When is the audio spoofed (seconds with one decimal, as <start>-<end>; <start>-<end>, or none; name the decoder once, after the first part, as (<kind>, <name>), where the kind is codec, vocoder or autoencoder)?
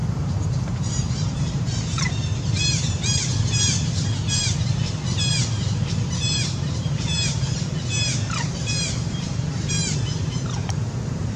0.0-3.3 (vocoder, BigVGAN v2); 6.1-11.4